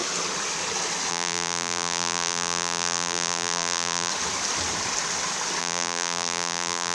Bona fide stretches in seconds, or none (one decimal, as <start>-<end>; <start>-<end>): 0.0-1.1; 4.1-5.6